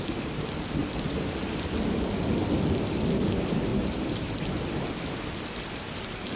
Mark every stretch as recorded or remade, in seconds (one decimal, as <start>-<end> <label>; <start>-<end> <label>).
0.0-6.4 recorded